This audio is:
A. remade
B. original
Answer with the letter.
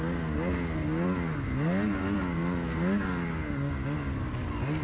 B